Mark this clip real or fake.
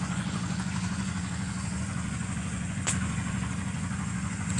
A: fake